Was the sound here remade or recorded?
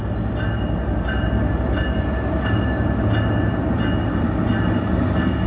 recorded